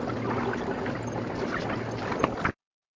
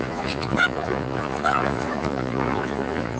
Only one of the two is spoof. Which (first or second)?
second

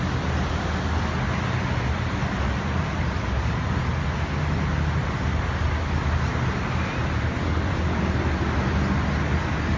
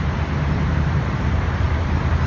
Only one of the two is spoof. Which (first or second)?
second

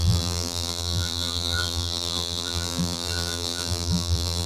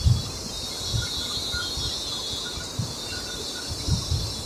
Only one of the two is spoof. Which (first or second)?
first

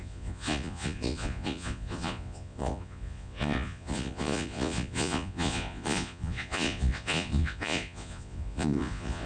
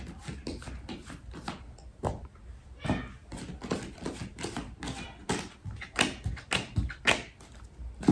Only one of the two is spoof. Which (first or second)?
first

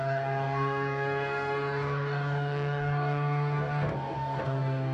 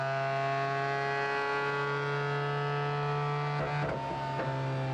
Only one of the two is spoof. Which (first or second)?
first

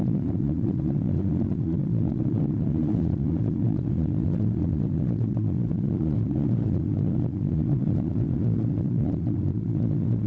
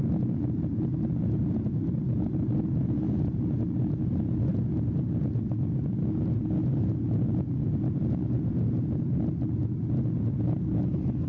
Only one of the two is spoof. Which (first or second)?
first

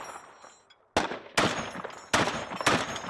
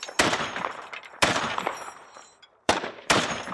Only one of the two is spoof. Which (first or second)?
second